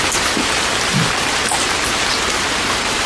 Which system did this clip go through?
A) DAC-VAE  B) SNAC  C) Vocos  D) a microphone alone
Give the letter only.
D